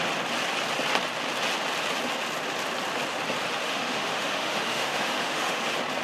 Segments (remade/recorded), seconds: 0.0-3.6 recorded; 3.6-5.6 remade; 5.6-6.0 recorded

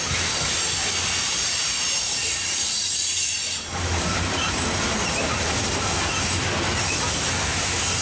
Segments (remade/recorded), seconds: 0.0-2.2 recorded; 2.2-5.7 remade; 5.7-8.0 recorded

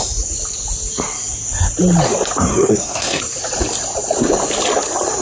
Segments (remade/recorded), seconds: 0.0-2.5 recorded; 2.5-3.2 remade; 3.2-5.2 recorded

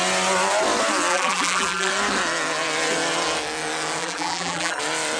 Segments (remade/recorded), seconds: 0.0-1.1 recorded; 1.1-1.9 remade; 1.9-4.0 recorded; 4.0-4.8 remade; 4.8-5.2 recorded